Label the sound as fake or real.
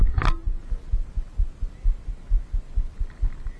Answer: real